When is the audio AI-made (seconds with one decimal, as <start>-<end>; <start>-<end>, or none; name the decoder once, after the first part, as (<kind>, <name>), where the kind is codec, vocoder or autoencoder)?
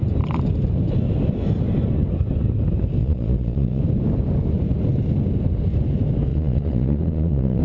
3.0-3.8 (vocoder, Vocos); 6.3-7.6